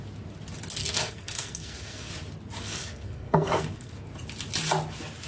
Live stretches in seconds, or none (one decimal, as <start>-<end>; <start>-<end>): 0.0-0.8; 2.1-2.6; 3.9-5.3